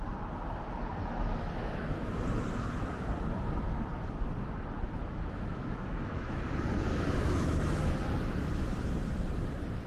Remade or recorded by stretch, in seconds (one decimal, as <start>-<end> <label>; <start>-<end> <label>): 0.0-1.0 recorded; 1.0-2.1 remade; 2.1-5.0 recorded; 5.0-6.4 remade; 6.4-6.9 recorded; 6.9-7.9 remade; 7.9-9.9 recorded